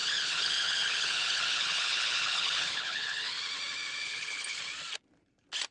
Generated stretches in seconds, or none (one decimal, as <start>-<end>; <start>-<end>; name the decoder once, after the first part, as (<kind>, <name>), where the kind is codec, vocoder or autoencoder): 0.0-3.4 (codec, HILCodec); 4.0-4.6